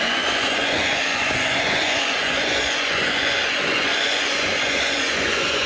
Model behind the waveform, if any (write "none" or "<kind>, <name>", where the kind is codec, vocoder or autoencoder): vocoder, Vocos